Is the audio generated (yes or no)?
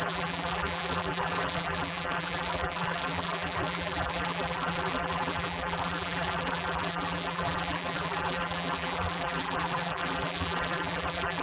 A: yes